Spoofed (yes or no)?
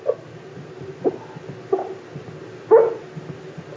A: no